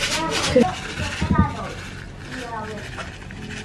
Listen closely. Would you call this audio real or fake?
real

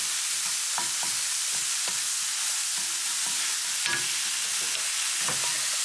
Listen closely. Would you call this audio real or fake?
real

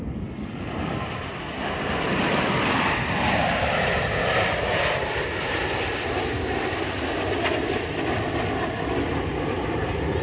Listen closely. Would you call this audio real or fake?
real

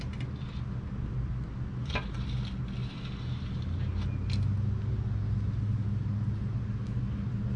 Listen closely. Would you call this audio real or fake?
real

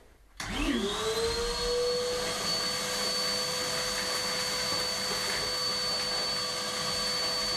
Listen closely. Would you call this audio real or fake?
real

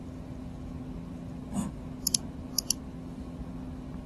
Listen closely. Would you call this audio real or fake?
real